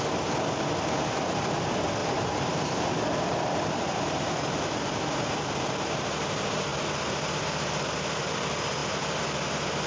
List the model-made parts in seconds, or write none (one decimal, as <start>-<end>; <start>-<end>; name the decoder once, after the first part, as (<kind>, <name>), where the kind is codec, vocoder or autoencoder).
2.0-5.0 (vocoder, BigVGAN v2)